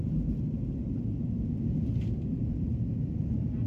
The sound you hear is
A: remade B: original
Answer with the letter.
B